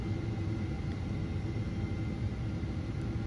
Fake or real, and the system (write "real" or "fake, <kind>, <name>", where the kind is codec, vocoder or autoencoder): real